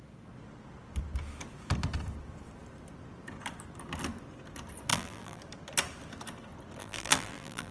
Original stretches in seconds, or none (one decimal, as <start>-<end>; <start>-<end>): 0.0-4.9; 5.4-6.8